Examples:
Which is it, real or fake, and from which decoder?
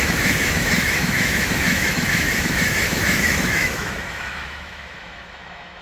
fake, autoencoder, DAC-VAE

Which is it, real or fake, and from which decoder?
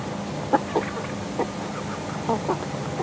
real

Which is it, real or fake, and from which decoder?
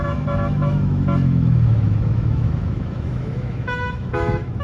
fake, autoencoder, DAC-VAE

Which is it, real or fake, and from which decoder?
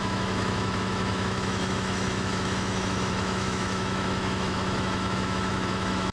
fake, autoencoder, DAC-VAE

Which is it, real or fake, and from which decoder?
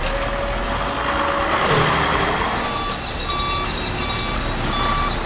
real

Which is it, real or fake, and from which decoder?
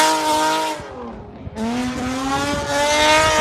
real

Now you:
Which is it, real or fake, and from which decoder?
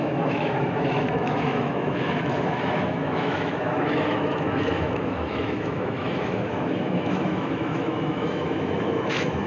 fake, autoencoder, DAC-VAE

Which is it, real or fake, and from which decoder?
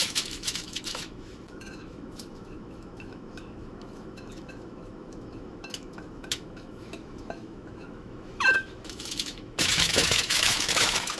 fake, autoencoder, DAC-VAE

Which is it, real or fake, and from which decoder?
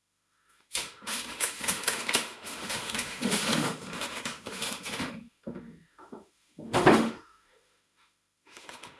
fake, autoencoder, DAC-VAE